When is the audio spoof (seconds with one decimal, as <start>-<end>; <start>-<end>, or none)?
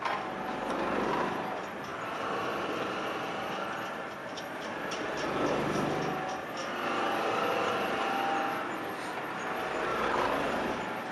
1.9-4.4; 9.9-10.7